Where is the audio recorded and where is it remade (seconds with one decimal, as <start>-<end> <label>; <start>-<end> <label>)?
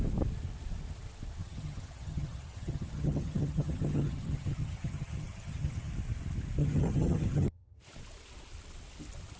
0.0-1.4 recorded; 1.4-5.9 remade; 5.9-6.6 recorded; 6.6-7.8 remade; 7.8-9.4 recorded